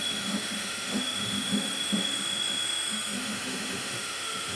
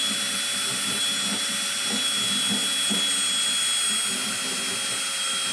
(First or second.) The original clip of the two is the second